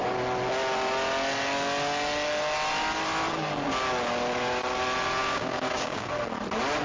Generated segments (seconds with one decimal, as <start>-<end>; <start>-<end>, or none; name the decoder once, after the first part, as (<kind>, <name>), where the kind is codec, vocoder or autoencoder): 5.2-6.1 (codec, DAC)